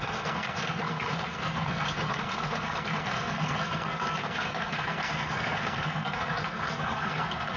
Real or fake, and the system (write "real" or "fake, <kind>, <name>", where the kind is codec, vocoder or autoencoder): fake, codec, SNAC